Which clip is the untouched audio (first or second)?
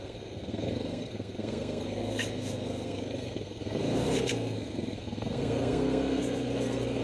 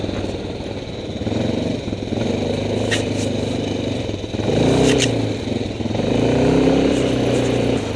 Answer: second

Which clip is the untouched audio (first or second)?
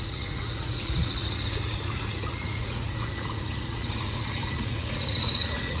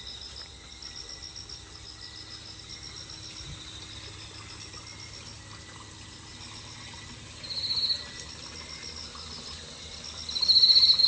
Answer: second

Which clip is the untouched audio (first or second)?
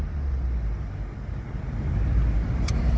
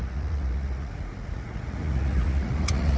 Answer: first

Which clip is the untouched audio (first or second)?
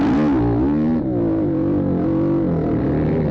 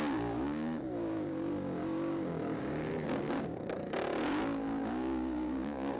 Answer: first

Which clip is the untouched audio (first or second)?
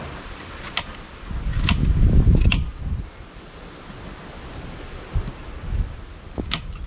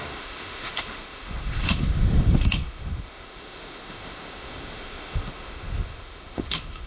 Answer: first